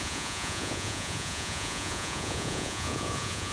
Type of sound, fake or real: fake